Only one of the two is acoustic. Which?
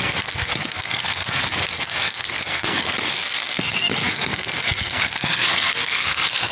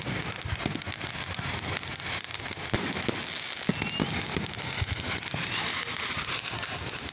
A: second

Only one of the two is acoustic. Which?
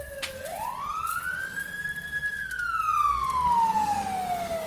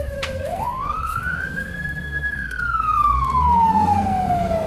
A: first